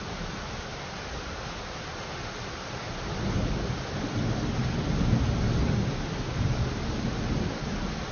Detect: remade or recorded recorded